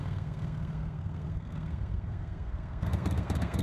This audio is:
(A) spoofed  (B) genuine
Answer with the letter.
A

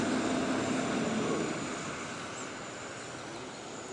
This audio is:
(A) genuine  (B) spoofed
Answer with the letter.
A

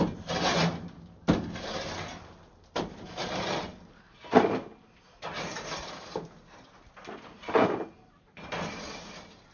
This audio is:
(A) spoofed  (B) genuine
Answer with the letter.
B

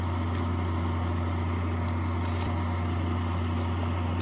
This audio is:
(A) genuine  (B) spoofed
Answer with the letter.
A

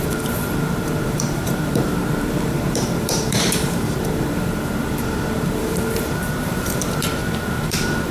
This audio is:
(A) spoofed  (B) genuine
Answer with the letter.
A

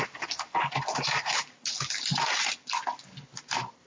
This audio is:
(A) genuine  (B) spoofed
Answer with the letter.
A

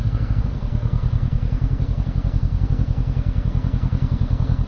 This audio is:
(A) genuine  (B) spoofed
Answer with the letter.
B